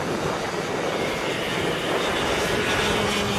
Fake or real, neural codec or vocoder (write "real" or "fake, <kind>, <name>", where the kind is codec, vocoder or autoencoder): real